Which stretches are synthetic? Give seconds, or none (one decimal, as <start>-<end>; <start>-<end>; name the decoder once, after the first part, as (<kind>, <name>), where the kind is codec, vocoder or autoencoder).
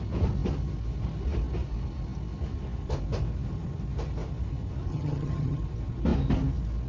4.9-5.6 (vocoder, HiFi-GAN)